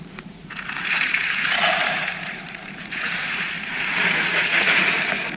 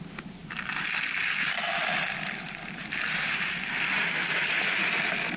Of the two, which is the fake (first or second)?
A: first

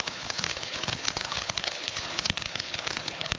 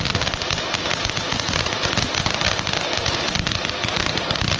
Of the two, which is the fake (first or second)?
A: first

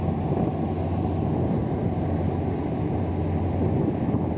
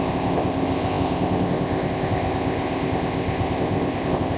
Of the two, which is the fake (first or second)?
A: second